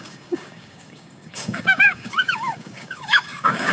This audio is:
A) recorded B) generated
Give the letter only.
B